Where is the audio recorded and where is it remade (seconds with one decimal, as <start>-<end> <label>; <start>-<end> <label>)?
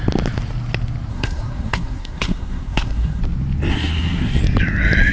0.0-1.1 recorded; 1.1-3.2 remade; 3.2-3.7 recorded; 3.7-4.4 remade; 4.4-5.1 recorded